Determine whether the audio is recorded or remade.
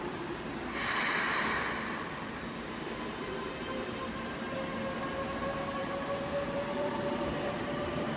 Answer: remade